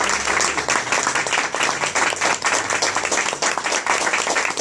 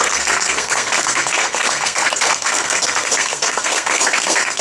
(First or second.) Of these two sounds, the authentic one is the first